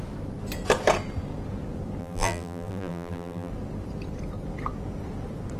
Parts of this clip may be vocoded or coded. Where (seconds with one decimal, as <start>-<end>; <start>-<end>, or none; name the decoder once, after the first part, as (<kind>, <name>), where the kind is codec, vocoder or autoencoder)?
2.0-3.5 (vocoder, BigVGAN v2)